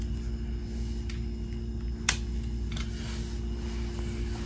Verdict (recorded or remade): recorded